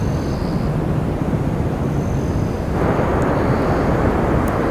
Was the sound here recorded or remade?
recorded